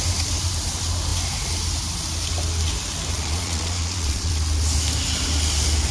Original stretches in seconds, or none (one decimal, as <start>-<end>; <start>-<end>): 0.0-3.1; 4.3-5.9